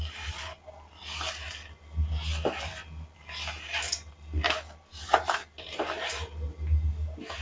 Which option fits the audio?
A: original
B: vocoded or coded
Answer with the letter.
A